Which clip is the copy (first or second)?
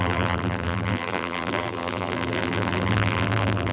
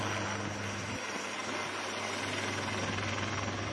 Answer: first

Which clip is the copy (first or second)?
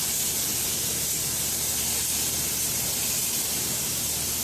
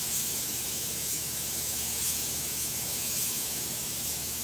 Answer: second